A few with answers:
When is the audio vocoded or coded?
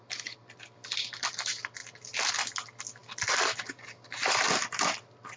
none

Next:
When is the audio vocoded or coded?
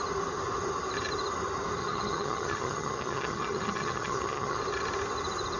1.8-4.6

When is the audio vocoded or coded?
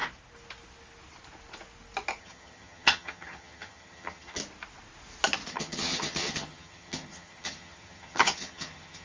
2.2-4.4; 5.5-9.0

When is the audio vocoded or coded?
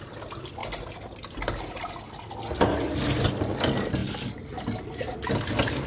none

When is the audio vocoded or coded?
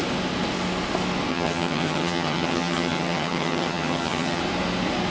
1.3-4.4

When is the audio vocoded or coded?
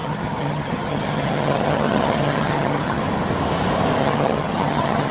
0.0-3.0; 4.0-5.1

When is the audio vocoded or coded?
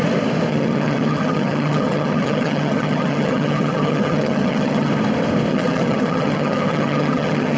0.5-4.9; 5.5-7.6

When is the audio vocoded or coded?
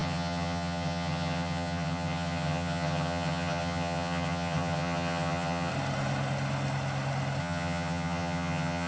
0.0-5.7; 7.4-8.9